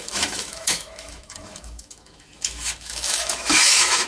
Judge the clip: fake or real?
fake